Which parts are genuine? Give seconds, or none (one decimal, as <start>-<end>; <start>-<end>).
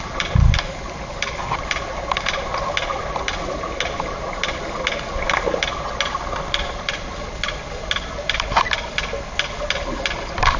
0.0-10.6